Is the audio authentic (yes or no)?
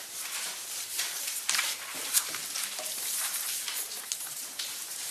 no